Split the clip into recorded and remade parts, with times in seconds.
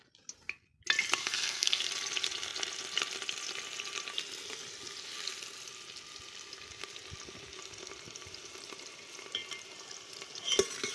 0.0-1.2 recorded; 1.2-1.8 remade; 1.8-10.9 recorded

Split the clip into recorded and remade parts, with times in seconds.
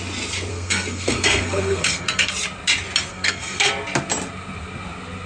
0.0-0.5 recorded; 0.5-2.3 remade; 2.3-3.1 recorded; 3.1-3.7 remade; 3.7-5.3 recorded